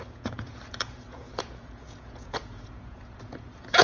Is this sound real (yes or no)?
no